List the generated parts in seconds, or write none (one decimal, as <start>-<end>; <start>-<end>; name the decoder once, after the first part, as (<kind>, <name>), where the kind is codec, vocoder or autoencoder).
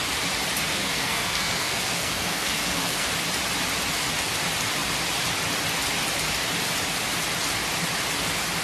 0.7-3.1 (codec, SNAC)